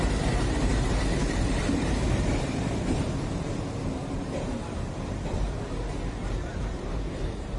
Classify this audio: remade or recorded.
remade